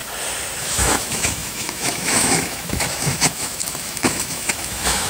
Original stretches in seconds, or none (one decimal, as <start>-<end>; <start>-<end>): 0.0-0.6